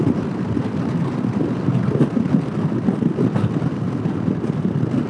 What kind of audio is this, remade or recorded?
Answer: recorded